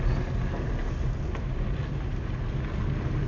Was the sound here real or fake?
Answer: real